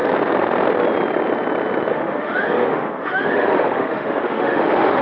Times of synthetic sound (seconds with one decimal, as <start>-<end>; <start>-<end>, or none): 1.9-5.0